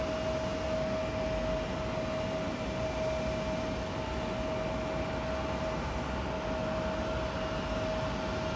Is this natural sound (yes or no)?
yes